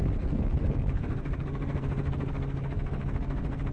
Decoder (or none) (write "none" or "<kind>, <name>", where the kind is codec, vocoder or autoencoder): codec, SNAC